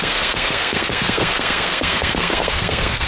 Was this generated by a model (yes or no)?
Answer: yes